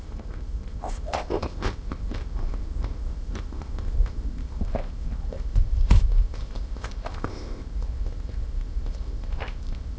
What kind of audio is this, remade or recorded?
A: remade